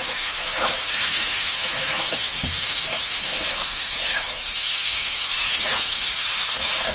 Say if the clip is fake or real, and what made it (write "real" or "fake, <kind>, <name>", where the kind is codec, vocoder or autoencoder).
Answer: fake, autoencoder, DAC-VAE